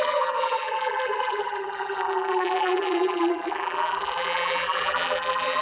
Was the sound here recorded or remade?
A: remade